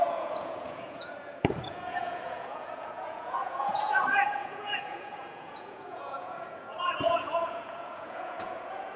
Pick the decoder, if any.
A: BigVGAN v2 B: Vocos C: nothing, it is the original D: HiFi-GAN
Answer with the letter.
B